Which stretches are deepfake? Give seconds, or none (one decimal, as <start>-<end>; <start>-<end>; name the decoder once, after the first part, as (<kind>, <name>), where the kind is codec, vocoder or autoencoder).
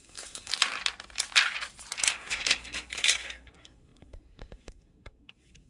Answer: 0.0-0.5 (codec, SNAC); 2.1-5.7